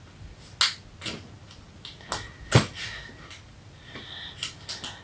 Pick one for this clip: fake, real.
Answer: real